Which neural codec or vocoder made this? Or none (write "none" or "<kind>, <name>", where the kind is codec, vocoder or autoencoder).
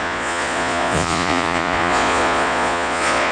vocoder, Vocos